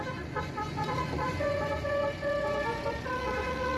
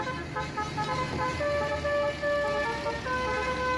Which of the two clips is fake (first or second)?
first